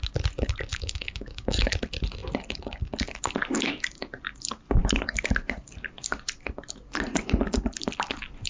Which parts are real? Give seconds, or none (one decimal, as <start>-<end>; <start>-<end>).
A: 0.0-0.7; 1.7-8.5